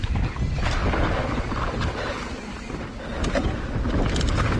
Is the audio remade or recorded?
recorded